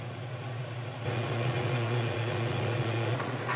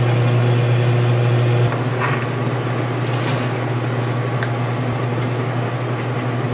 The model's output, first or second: first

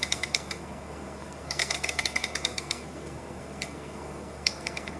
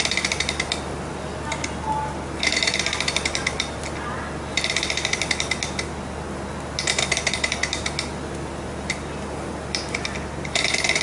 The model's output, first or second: first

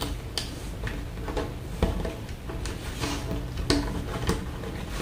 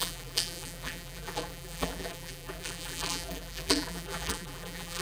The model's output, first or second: second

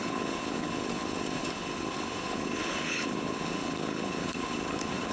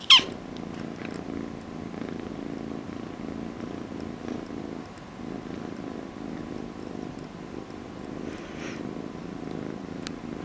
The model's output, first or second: first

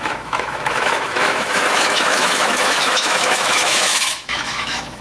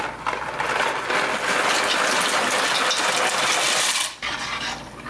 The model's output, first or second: first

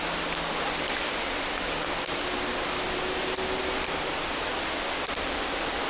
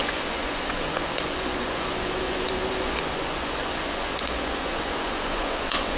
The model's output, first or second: second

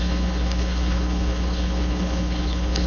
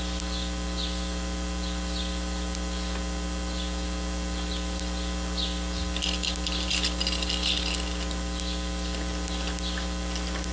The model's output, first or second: first